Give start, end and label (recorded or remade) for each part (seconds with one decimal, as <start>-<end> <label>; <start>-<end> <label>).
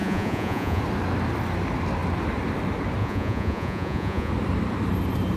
0.0-0.8 remade; 0.8-3.0 recorded; 3.0-4.3 remade; 4.3-5.4 recorded